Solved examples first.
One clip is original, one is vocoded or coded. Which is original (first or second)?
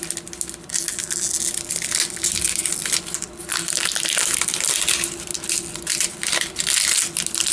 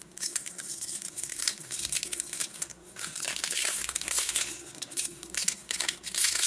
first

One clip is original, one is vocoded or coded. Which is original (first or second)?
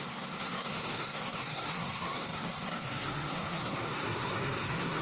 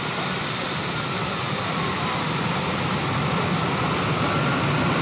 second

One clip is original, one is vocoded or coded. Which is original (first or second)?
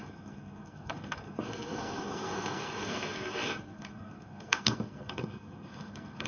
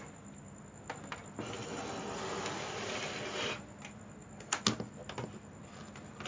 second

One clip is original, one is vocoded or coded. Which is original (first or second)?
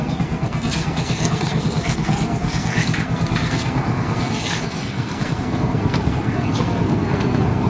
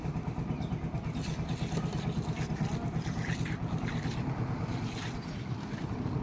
second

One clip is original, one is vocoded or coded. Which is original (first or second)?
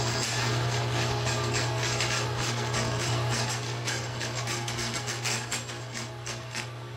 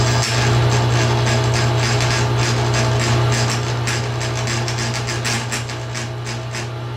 second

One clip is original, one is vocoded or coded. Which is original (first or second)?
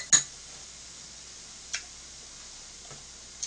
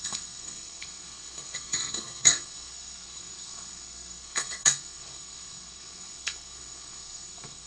first